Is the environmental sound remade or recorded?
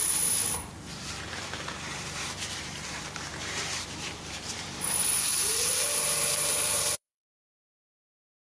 remade